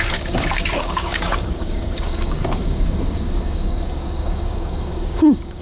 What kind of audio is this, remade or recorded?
remade